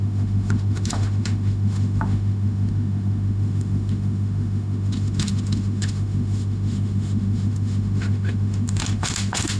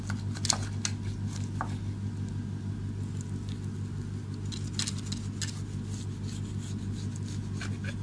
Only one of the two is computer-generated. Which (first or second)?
first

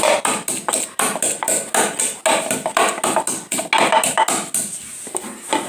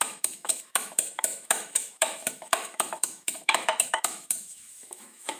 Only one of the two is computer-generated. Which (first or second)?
second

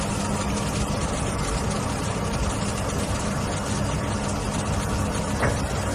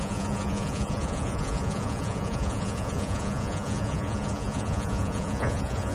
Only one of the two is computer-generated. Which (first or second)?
second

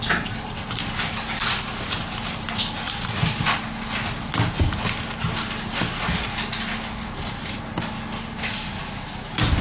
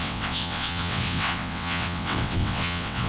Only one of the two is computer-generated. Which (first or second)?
second